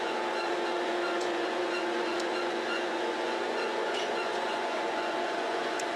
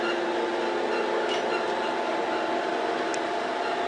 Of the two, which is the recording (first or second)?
second